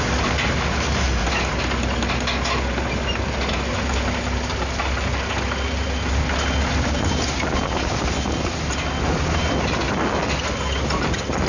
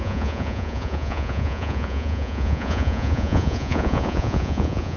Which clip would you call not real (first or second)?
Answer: second